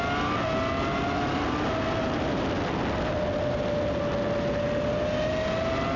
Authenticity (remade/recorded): recorded